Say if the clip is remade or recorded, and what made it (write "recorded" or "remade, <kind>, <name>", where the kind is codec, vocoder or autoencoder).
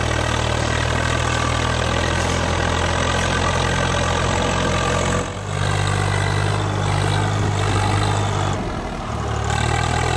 recorded